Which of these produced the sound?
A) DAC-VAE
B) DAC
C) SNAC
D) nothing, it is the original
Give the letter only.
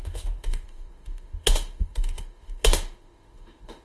A